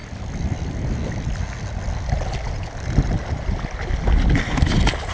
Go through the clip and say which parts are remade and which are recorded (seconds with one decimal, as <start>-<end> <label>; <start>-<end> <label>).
0.0-5.1 recorded